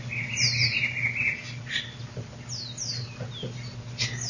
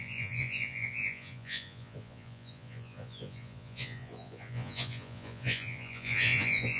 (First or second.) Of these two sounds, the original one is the first